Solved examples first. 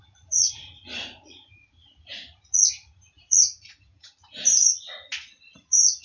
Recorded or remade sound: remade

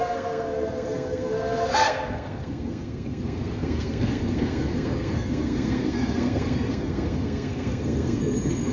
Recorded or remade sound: remade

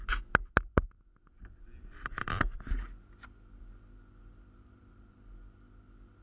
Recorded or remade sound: recorded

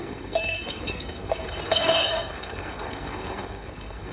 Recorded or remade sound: remade